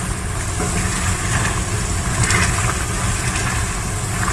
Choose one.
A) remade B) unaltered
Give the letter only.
B